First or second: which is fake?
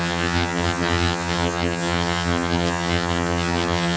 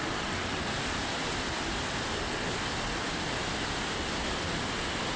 first